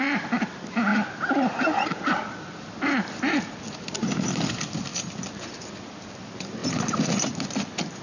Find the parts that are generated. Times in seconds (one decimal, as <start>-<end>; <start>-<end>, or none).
none